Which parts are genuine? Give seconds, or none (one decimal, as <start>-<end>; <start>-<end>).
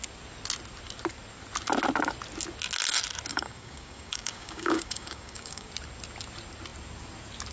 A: 0.0-3.3; 5.7-7.5